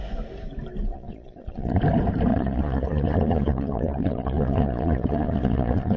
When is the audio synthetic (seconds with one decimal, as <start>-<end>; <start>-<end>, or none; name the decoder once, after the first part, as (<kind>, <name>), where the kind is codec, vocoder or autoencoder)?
0.9-1.8 (vocoder, Vocos); 2.3-6.0